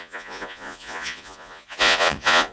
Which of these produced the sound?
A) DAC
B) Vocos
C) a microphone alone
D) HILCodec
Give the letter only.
B